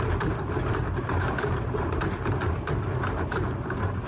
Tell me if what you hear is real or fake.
fake